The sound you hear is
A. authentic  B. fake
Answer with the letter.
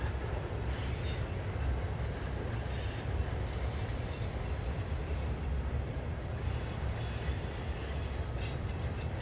A